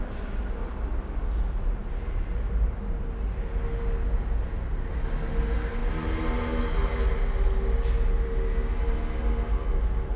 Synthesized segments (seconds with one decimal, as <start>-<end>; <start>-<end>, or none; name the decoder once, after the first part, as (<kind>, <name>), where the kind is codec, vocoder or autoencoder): none